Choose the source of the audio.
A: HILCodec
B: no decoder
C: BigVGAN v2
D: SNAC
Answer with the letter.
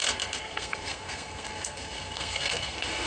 D